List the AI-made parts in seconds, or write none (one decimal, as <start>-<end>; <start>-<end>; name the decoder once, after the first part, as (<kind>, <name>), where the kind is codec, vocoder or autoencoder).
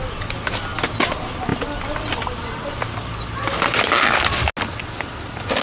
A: none